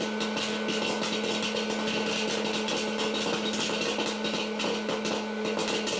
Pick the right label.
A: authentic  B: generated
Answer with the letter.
A